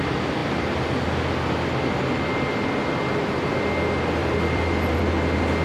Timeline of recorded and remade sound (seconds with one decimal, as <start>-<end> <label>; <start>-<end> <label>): 0.0-4.2 recorded; 4.2-5.0 remade; 5.0-5.6 recorded